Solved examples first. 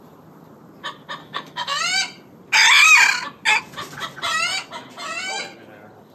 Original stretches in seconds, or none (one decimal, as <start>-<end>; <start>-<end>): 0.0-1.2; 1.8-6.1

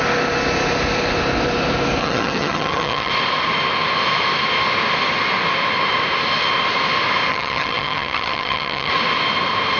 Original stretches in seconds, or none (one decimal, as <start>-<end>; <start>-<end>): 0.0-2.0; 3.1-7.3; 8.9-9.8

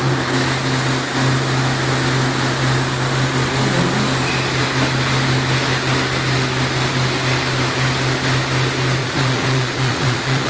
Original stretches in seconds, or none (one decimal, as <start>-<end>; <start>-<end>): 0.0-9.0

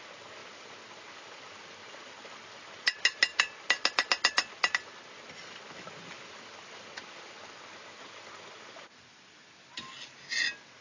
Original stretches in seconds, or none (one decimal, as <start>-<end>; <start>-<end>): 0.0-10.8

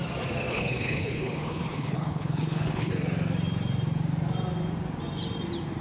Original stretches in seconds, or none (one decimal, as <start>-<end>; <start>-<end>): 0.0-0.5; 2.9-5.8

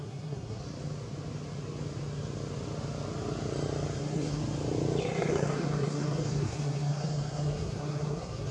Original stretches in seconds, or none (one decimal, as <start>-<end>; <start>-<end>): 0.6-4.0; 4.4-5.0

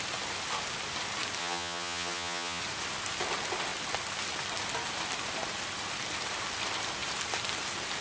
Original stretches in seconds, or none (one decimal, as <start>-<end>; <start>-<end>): 0.0-1.4; 2.6-8.0